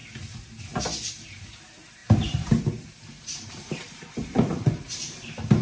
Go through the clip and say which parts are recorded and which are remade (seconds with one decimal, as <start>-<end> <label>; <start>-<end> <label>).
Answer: 0.0-2.0 recorded; 2.0-5.6 remade

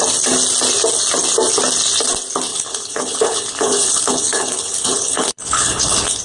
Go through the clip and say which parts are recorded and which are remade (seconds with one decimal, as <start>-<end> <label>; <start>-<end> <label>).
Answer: 0.0-2.5 recorded; 2.5-6.2 remade

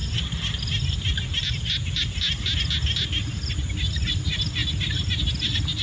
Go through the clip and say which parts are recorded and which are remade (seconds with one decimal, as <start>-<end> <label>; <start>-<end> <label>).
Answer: 0.0-5.8 recorded

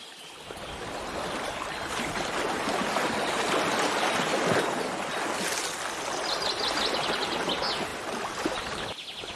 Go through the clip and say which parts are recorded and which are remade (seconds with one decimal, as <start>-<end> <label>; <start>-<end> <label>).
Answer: 0.0-7.9 recorded; 7.9-8.6 remade; 8.6-9.4 recorded

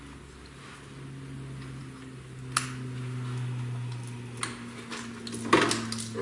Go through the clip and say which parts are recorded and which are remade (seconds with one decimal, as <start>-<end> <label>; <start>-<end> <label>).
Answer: 0.0-6.2 recorded